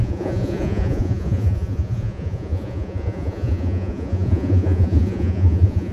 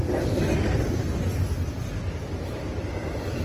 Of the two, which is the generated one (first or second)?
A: first